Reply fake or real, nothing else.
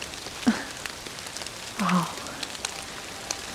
real